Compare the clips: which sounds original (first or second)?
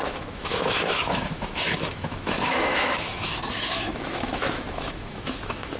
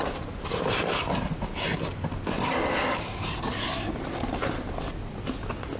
second